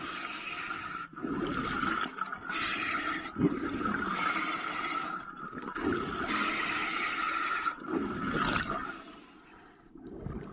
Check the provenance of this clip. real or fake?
real